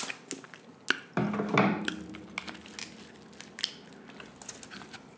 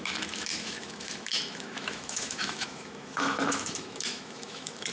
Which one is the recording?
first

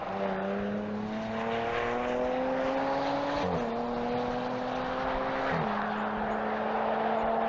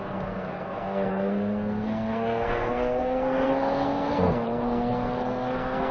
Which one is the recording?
first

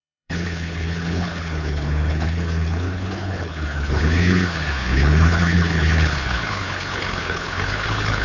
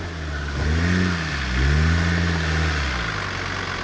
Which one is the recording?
second